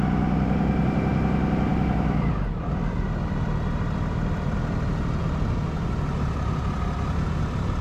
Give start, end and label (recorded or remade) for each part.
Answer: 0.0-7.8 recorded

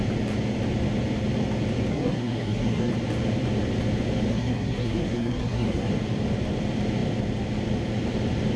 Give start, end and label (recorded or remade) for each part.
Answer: 0.0-1.9 recorded; 1.9-2.9 remade; 2.9-4.3 recorded; 4.3-5.9 remade; 5.9-8.6 recorded

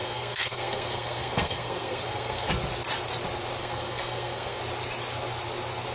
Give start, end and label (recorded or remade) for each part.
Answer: 0.0-2.5 remade; 2.5-3.6 recorded; 3.6-4.6 remade; 4.6-5.9 recorded

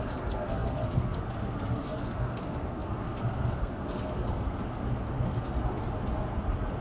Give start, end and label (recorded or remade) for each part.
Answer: 0.0-4.6 remade; 4.6-6.8 recorded

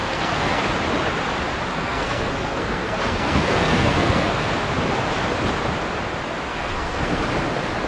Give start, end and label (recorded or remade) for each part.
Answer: 0.0-0.6 remade; 0.6-1.7 recorded; 1.7-4.5 remade; 4.5-6.5 recorded; 6.5-7.2 remade; 7.2-7.9 recorded